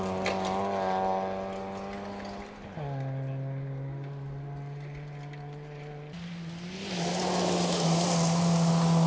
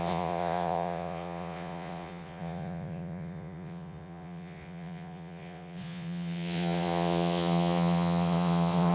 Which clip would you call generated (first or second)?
second